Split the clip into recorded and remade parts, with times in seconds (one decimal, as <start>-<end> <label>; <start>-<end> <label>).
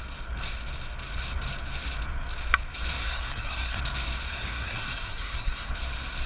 0.0-3.0 recorded; 3.0-3.8 remade; 3.8-4.3 recorded; 4.3-5.7 remade; 5.7-6.3 recorded